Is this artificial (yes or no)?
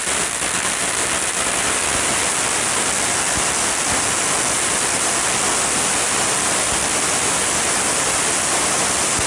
no